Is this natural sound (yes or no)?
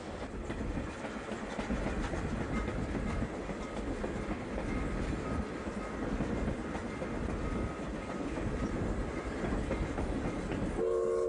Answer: yes